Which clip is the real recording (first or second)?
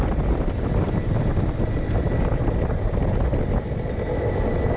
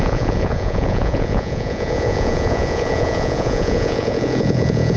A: first